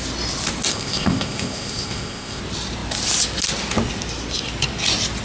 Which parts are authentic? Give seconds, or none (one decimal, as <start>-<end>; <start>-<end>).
0.0-0.7; 2.4-5.2